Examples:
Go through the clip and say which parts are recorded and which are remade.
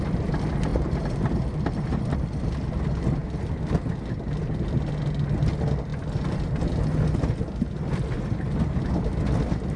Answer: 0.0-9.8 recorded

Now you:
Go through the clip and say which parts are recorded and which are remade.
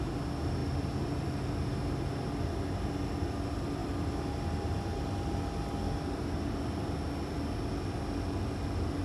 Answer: 0.0-0.6 recorded; 0.6-1.6 remade; 1.6-3.8 recorded; 3.8-5.4 remade; 5.4-9.0 recorded